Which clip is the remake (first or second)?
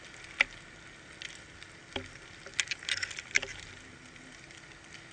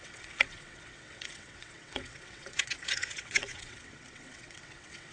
second